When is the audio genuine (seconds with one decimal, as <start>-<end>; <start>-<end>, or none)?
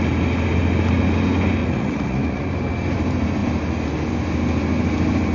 0.0-1.6; 2.5-5.3